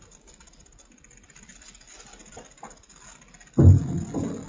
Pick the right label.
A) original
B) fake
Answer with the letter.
A